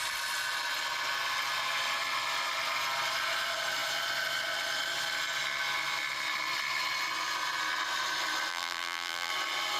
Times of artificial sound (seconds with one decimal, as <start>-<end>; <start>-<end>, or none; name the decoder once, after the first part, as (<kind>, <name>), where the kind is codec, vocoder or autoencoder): 8.5-9.3 (vocoder, BigVGAN v2)